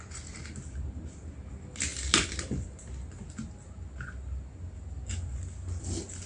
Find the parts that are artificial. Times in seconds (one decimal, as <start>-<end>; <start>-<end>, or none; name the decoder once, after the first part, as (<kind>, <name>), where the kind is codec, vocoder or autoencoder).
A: none